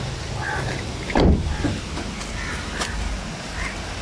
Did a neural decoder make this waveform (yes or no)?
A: no